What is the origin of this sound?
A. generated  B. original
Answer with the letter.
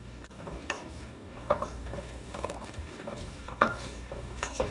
A